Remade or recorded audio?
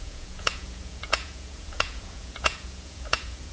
remade